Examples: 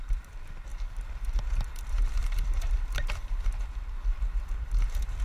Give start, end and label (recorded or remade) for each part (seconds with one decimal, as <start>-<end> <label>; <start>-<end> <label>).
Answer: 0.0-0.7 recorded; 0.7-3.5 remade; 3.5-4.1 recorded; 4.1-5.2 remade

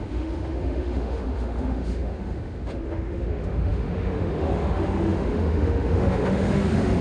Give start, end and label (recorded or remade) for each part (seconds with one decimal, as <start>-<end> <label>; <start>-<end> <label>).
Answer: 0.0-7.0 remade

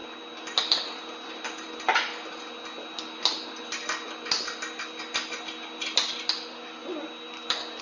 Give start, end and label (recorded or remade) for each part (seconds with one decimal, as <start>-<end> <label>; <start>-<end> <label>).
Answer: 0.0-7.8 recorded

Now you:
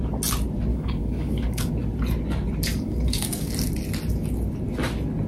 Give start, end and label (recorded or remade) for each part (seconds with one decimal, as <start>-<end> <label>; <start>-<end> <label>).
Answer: 0.0-0.7 recorded; 0.7-1.7 remade; 1.7-2.7 recorded; 2.7-3.5 remade; 3.5-5.3 recorded

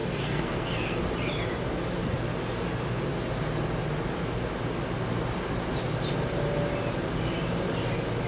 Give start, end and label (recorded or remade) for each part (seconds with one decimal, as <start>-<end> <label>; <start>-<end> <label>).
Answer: 0.0-1.0 remade; 1.0-8.3 recorded

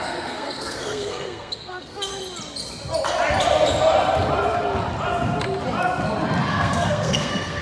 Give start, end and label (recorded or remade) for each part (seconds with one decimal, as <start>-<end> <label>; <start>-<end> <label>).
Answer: 0.0-2.1 remade; 2.1-6.5 recorded; 6.5-7.6 remade

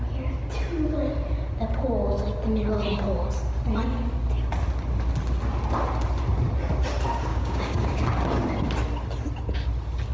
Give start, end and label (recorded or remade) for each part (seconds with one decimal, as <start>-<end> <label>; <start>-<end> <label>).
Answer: 0.0-7.3 recorded; 7.3-8.0 remade; 8.0-10.1 recorded

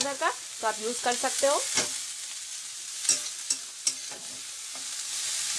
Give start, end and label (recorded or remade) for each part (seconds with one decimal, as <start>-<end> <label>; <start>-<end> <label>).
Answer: 0.0-5.6 recorded